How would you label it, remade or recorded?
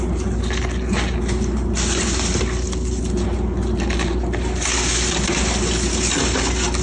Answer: recorded